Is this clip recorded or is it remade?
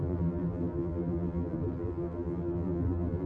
remade